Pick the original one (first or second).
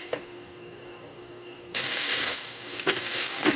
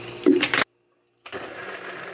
second